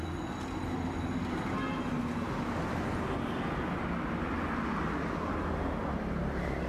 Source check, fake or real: real